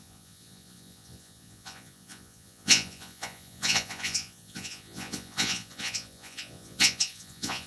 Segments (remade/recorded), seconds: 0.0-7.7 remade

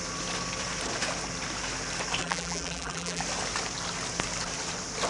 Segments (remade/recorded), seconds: 0.0-2.2 recorded; 2.2-3.2 remade; 3.2-5.1 recorded

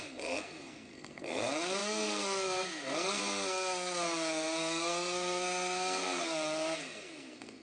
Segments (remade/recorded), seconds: 0.0-7.6 remade

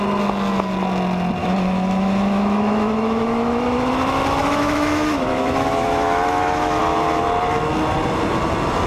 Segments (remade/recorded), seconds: 0.0-1.4 recorded; 1.4-3.9 remade; 3.9-4.4 recorded; 4.4-6.8 remade; 6.8-8.9 recorded

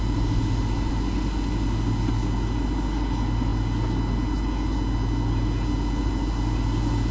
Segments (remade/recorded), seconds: 0.0-7.1 recorded

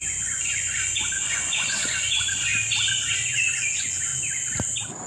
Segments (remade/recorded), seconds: 0.0-2.5 remade; 2.5-3.1 recorded; 3.1-4.1 remade; 4.1-5.1 recorded

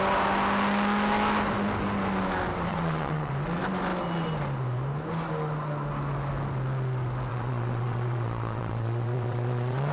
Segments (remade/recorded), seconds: 0.0-2.7 recorded; 2.7-3.3 remade; 3.3-7.3 recorded; 7.3-9.9 remade

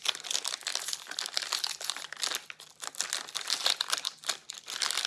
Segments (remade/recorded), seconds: 0.0-5.1 recorded